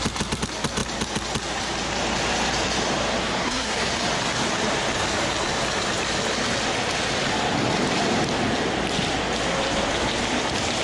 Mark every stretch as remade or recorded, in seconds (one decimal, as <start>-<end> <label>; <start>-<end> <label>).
0.0-3.4 recorded; 3.4-3.9 remade; 3.9-10.8 recorded